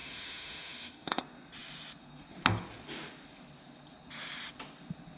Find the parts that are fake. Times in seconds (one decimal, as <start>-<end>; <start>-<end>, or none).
0.0-1.2